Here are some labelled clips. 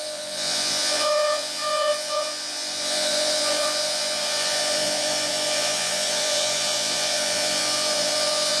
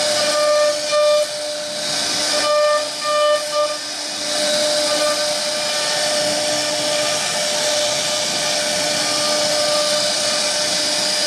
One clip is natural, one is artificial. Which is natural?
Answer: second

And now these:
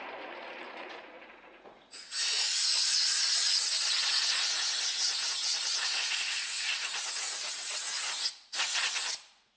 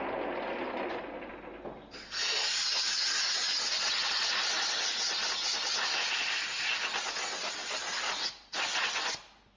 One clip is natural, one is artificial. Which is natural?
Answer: second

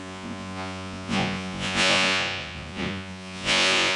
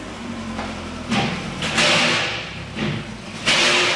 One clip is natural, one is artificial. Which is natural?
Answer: second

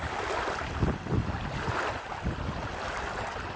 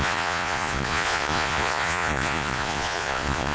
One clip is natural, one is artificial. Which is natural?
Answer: first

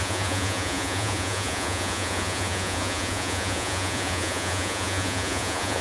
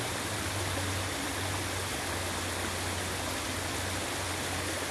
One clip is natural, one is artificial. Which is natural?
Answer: second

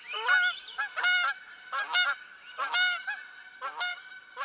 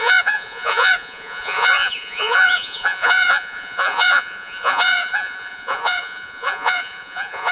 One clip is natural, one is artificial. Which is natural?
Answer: first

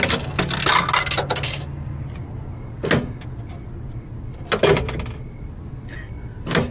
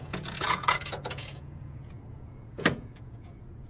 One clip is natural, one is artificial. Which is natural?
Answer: first